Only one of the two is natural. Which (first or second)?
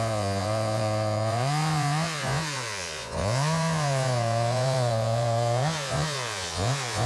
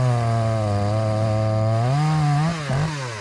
second